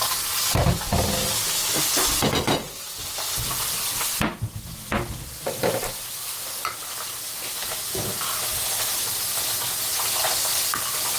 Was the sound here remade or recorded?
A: recorded